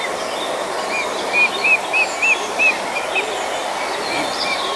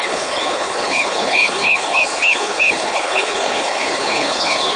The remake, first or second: second